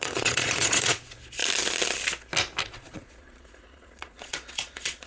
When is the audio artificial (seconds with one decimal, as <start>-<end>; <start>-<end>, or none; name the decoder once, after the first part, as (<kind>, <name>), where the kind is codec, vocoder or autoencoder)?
0.0-1.4 (vocoder, Vocos); 2.6-5.1